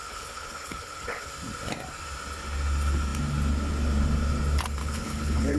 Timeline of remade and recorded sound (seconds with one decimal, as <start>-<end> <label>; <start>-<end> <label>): 0.0-1.3 remade; 1.3-4.8 recorded; 4.8-5.6 remade